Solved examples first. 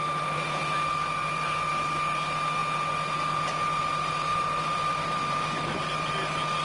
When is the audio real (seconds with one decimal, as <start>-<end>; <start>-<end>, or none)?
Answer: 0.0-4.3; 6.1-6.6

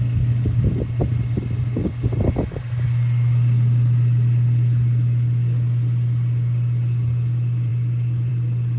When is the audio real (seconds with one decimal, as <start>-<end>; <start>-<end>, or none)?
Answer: 0.0-8.8

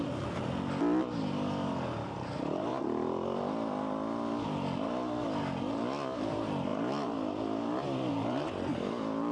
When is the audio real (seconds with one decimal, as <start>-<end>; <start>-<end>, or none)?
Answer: 0.0-9.3

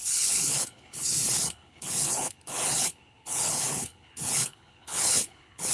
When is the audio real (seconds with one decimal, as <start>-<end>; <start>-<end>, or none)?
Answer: none